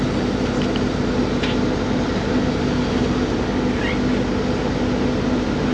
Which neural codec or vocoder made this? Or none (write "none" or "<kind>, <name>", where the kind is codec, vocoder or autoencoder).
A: none